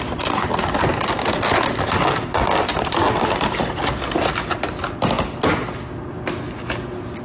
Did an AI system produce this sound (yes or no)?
no